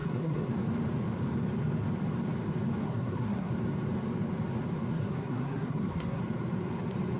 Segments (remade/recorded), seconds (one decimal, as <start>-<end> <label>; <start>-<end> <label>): 0.0-0.5 remade; 0.5-2.8 recorded; 2.8-3.5 remade; 3.5-4.9 recorded; 4.9-6.2 remade; 6.2-7.2 recorded